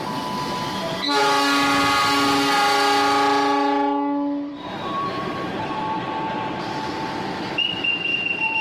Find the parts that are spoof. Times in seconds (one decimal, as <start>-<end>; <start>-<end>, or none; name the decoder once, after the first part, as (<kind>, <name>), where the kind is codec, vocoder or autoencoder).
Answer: 4.5-6.9 (vocoder, BigVGAN v2); 8.1-8.6